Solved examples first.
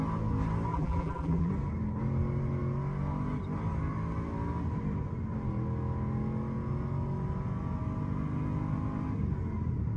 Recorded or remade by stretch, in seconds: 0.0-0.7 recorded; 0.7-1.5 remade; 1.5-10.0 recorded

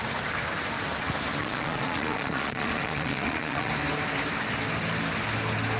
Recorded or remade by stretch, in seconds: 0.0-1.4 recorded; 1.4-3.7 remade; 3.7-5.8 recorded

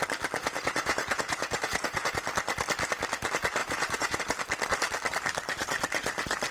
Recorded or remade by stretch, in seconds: 0.0-0.4 recorded; 0.4-2.1 remade; 2.1-3.6 recorded; 3.6-4.2 remade; 4.2-6.5 recorded